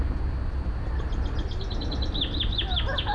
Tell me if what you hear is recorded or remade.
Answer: recorded